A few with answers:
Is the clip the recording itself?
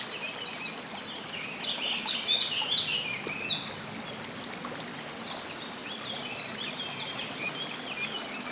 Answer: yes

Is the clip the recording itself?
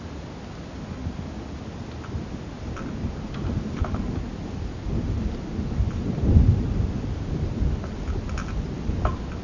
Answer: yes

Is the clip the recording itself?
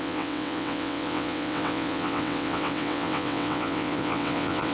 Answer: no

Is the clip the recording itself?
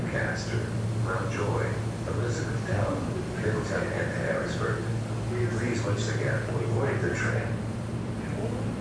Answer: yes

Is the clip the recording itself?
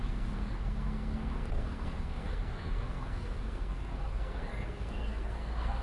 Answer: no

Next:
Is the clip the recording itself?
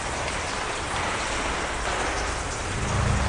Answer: yes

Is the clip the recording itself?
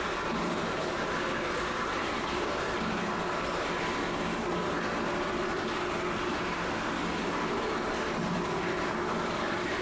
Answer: yes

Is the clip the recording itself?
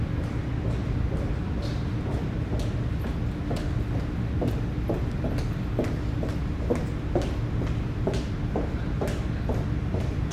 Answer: yes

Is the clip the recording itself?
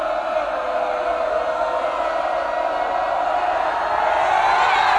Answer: yes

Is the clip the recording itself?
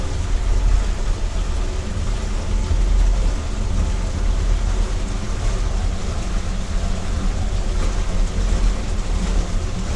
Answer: yes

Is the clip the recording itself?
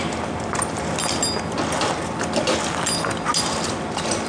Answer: yes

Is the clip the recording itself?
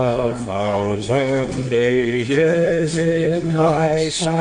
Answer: no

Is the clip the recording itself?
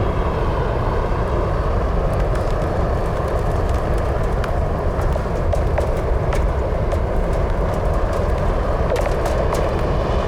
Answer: yes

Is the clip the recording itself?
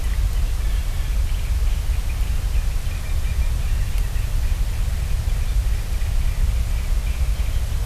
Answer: yes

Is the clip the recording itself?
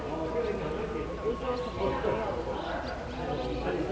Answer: yes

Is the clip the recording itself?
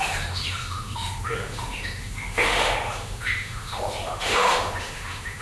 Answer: no